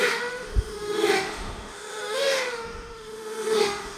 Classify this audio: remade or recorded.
remade